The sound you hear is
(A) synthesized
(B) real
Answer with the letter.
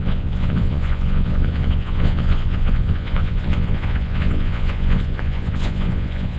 A